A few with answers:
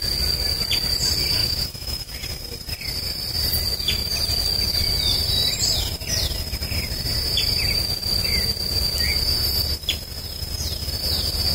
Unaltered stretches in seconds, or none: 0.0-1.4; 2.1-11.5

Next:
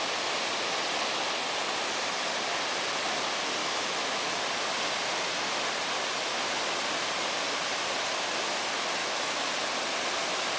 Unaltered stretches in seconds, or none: 0.0-3.6; 4.3-9.0; 9.5-10.6

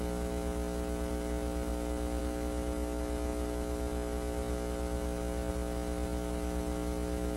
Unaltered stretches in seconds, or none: 0.0-7.4

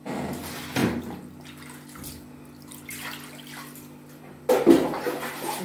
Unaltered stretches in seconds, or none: 0.0-5.6

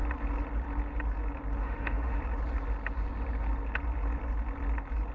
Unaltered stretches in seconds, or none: 0.0-1.6; 2.2-5.1

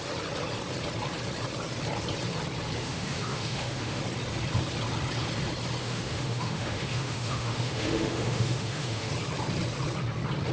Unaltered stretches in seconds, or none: 0.0-2.8; 4.0-5.8; 9.1-10.5

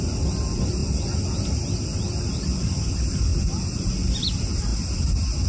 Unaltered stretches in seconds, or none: 0.0-5.5

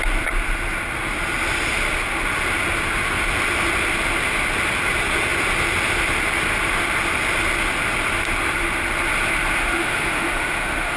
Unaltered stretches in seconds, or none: 0.0-9.6